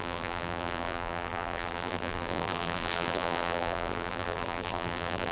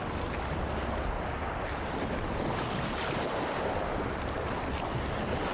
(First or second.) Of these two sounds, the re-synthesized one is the first